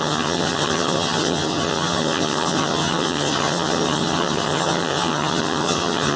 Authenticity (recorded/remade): remade